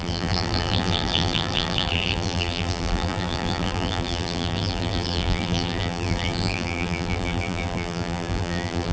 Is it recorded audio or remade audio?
remade